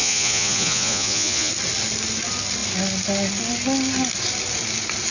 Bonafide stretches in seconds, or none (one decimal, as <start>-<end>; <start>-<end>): 1.5-5.1